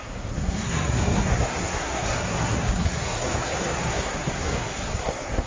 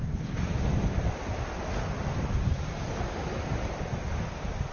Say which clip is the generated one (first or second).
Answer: first